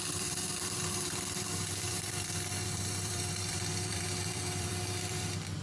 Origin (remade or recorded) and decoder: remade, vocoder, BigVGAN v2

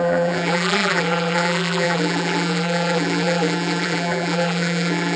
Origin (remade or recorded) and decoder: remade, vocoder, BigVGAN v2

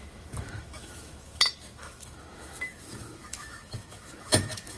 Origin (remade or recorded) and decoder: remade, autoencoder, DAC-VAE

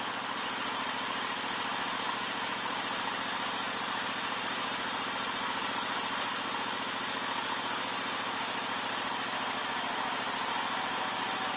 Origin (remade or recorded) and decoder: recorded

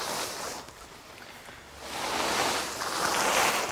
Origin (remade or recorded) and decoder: recorded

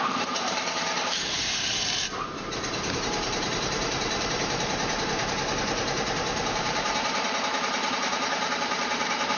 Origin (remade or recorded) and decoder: remade, vocoder, BigVGAN v2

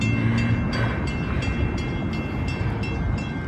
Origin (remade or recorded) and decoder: recorded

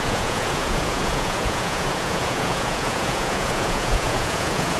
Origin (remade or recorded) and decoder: remade, vocoder, Vocos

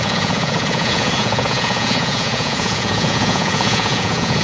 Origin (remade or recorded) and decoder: remade, vocoder, Vocos